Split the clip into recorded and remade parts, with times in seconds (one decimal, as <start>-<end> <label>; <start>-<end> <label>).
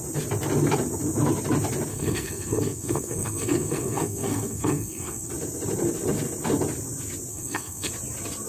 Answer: 0.0-1.9 recorded; 1.9-5.3 remade; 5.3-7.3 recorded; 7.3-7.9 remade; 7.9-8.5 recorded